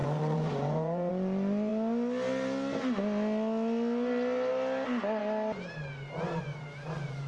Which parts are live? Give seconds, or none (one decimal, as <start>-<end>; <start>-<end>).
1.1-7.3